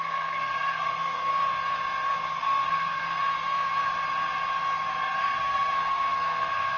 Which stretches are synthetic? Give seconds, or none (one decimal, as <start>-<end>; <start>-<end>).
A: 0.0-1.3; 2.4-3.2; 5.2-6.8